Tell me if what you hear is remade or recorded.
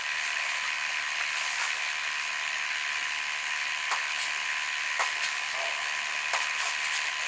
recorded